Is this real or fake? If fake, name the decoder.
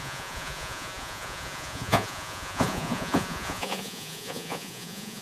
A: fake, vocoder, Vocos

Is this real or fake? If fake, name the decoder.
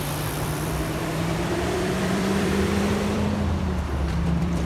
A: fake, vocoder, BigVGAN v2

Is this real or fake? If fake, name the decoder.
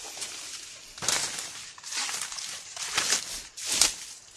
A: real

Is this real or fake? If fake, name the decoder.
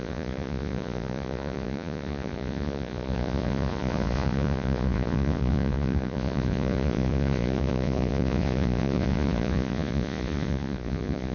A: fake, vocoder, Vocos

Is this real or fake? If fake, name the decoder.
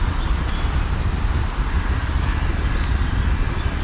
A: real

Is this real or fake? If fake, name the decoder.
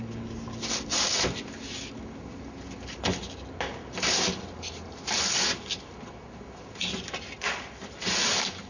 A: real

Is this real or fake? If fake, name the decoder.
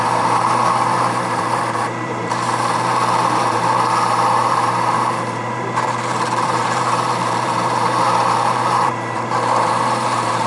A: fake, vocoder, BigVGAN v2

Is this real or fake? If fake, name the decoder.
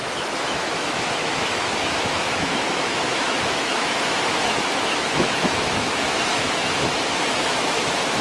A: fake, autoencoder, DAC-VAE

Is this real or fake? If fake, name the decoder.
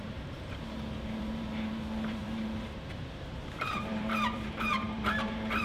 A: fake, vocoder, BigVGAN v2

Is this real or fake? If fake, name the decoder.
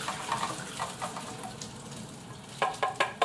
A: real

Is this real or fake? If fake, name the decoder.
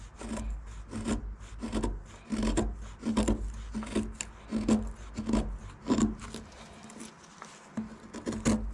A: real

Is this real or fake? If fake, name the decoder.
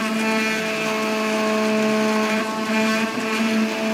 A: real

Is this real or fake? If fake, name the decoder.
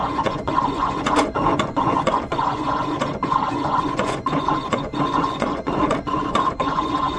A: fake, vocoder, Vocos